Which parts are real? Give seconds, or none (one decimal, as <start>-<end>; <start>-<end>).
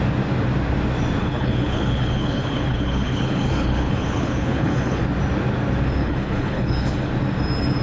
0.0-1.2; 5.0-6.0; 7.1-7.8